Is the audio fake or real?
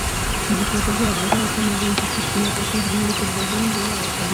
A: fake